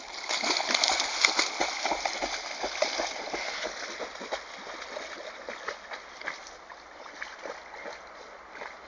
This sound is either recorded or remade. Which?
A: recorded